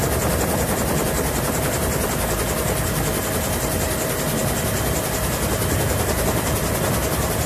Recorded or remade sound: remade